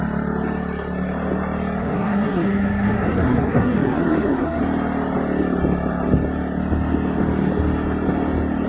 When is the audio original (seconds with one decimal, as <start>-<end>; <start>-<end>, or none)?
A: 0.0-1.8; 4.6-8.7